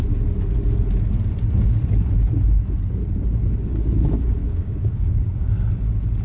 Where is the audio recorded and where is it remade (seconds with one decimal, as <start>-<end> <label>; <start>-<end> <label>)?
0.0-4.4 recorded; 4.4-5.7 remade; 5.7-6.2 recorded